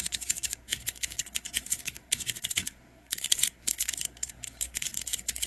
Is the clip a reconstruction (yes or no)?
yes